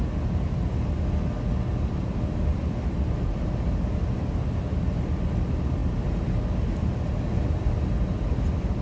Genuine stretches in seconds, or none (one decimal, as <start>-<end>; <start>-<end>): 0.0-2.5; 3.4-5.8; 6.4-8.8